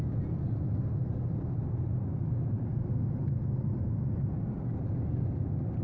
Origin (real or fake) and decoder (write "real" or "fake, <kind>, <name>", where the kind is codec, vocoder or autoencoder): real